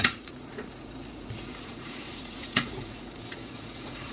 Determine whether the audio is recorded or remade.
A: remade